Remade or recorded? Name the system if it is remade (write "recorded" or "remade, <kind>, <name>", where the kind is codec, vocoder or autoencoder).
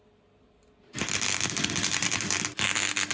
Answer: recorded